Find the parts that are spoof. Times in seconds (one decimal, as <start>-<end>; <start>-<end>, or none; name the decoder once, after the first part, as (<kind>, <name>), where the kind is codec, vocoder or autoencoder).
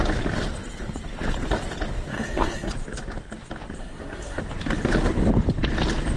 2.1-2.7 (codec, SNAC); 3.8-4.4